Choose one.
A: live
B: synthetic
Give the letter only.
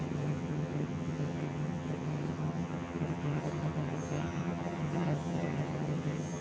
B